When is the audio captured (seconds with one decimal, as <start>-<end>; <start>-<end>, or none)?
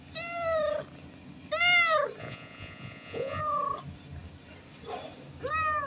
0.0-2.2; 3.4-5.9